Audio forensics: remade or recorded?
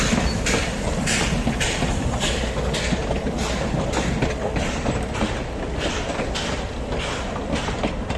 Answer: recorded